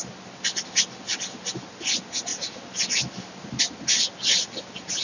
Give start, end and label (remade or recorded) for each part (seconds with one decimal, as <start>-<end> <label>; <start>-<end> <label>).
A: 0.0-5.0 recorded